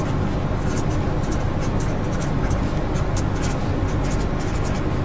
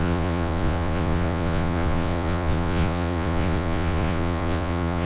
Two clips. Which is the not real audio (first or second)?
second